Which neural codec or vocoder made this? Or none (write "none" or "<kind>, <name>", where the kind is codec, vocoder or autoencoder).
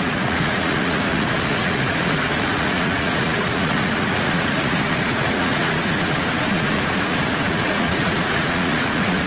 vocoder, Vocos